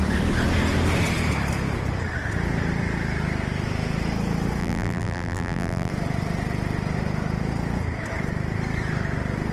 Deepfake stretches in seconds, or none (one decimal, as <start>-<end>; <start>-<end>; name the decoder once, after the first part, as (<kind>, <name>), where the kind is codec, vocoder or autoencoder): 4.6-5.9 (vocoder, BigVGAN v2)

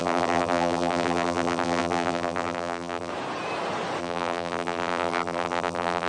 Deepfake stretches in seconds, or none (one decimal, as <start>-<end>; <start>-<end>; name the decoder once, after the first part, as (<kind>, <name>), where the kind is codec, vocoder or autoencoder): 0.0-3.1 (vocoder, BigVGAN v2); 4.0-6.1

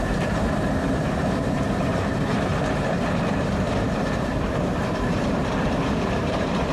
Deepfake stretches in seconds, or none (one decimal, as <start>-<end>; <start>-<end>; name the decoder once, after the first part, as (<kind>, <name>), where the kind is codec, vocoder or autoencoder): 0.0-2.5 (vocoder, BigVGAN v2); 3.5-6.7

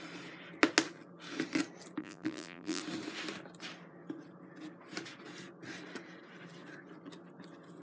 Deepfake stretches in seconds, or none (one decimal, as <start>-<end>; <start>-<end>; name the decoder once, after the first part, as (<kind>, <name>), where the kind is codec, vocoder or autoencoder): 2.0-2.8 (vocoder, BigVGAN v2)